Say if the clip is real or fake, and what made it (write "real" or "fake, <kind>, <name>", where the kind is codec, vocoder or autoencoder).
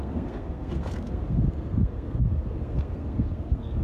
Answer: fake, codec, SNAC